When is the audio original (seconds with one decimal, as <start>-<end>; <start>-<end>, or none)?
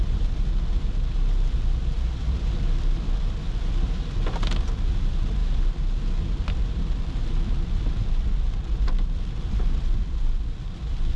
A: 5.4-6.2; 8.0-8.6